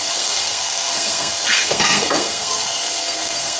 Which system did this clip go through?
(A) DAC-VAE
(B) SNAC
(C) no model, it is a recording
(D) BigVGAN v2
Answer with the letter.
B